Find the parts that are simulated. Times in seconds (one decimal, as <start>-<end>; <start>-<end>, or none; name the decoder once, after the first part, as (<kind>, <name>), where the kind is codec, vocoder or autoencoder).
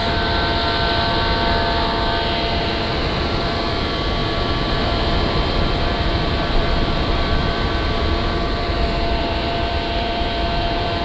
3.0-11.0 (vocoder, BigVGAN v2)